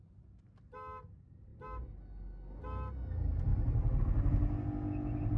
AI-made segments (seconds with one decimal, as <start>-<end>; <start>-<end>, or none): none